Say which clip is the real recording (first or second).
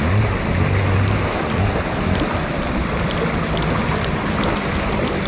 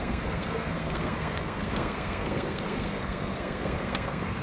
first